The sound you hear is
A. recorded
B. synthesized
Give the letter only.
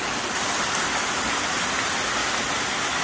A